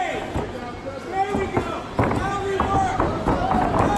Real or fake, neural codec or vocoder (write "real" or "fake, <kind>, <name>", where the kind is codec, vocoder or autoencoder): real